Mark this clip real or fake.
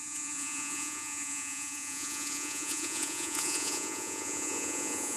fake